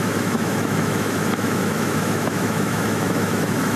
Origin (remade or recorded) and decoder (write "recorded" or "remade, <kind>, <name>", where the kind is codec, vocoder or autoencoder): remade, autoencoder, DAC-VAE